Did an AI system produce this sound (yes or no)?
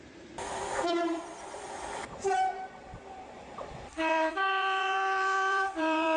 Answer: yes